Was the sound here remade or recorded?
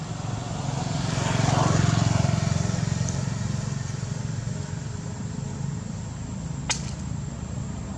recorded